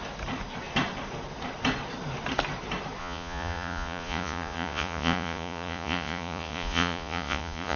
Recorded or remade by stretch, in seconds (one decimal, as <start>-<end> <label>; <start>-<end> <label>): 0.0-3.0 recorded; 3.0-7.8 remade